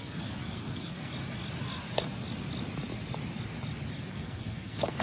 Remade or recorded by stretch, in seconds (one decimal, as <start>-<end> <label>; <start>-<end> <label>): 0.0-1.1 remade; 1.1-4.1 recorded; 4.1-5.0 remade